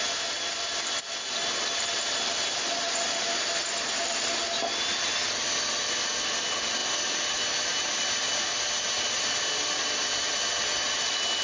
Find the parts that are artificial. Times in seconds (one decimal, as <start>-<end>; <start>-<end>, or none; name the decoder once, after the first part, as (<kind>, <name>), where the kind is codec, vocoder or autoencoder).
none